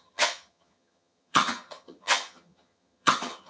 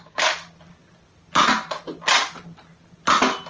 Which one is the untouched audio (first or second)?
second